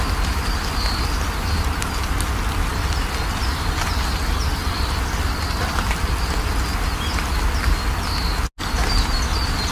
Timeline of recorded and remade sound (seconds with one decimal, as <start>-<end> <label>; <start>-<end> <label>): 0.0-9.7 recorded